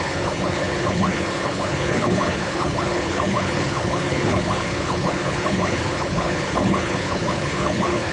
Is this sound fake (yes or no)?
yes